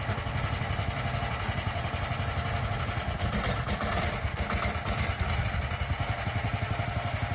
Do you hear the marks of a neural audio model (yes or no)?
no